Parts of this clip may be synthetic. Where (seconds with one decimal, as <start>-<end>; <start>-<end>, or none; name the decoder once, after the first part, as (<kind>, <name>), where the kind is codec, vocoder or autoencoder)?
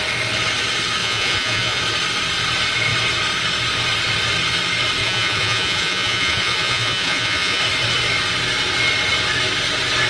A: 1.0-1.8 (vocoder, Vocos); 5.0-7.6